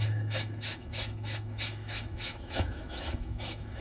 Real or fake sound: fake